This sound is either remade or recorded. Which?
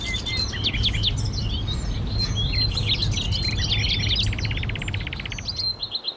recorded